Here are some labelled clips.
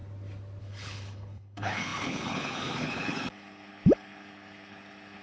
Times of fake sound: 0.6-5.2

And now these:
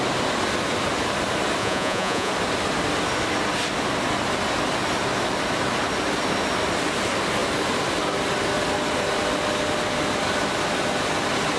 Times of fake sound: 1.6-2.3

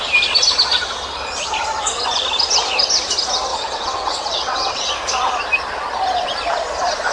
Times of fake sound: 3.5-4.9

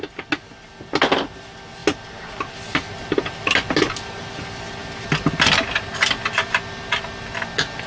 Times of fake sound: none

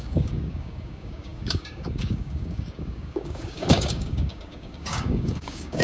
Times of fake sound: 0.0-5.8

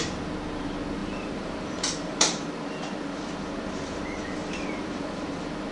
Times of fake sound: 1.0-2.5; 4.4-5.3